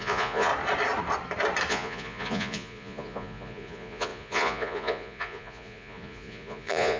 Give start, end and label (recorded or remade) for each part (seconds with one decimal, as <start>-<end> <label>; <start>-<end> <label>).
0.0-0.5 remade; 0.5-1.7 recorded; 1.7-7.0 remade